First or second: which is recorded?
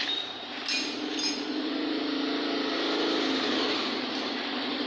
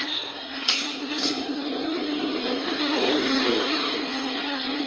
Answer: first